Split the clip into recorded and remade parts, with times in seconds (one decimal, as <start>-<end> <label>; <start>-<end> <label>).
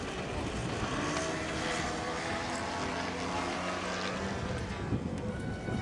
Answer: 0.0-4.7 recorded; 4.7-5.3 remade; 5.3-5.8 recorded